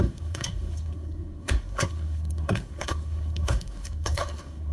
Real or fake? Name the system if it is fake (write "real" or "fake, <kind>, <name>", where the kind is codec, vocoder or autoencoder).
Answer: fake, codec, SNAC